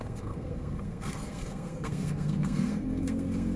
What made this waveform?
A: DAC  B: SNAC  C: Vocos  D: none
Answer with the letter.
B